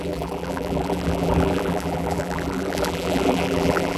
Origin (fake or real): fake